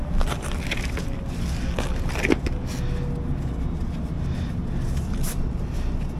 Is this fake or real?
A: real